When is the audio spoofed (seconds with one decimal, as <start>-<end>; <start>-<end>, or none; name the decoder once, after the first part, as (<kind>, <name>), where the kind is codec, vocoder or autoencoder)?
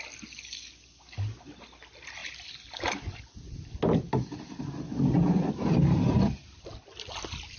none